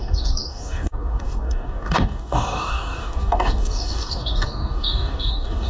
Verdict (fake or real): fake